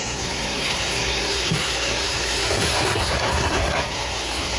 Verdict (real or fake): fake